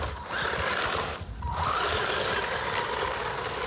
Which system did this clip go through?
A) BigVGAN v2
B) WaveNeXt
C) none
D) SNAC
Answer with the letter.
C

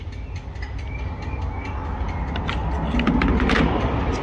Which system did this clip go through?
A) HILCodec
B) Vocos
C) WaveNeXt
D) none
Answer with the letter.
D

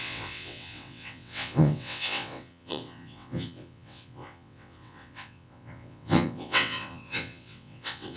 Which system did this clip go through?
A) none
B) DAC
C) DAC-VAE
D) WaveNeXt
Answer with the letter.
D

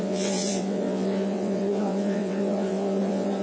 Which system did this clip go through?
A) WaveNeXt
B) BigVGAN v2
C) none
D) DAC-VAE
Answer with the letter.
A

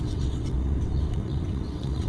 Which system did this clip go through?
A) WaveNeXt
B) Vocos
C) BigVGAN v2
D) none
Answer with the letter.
A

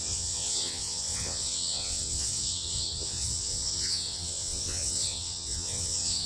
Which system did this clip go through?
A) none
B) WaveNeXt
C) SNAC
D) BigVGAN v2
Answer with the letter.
B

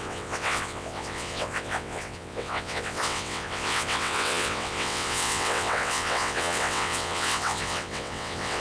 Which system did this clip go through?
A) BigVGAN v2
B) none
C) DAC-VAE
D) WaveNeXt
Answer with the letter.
D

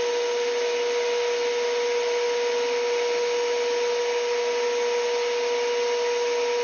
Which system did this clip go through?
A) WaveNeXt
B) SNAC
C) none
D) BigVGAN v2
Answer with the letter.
C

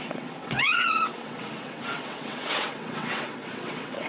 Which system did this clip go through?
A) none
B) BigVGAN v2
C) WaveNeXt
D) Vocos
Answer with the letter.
C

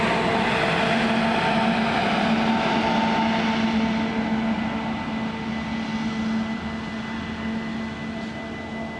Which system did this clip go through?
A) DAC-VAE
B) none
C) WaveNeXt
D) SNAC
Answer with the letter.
B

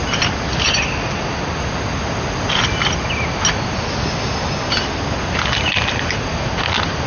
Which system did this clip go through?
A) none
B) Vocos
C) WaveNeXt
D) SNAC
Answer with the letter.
A